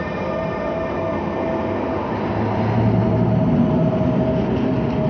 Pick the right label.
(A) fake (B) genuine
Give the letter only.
B